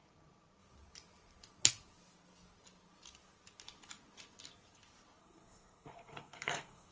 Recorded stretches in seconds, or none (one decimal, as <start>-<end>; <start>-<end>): 0.0-5.2